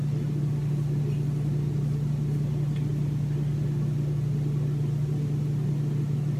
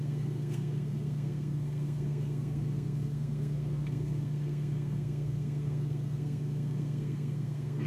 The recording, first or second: first